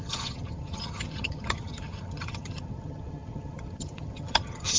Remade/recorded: remade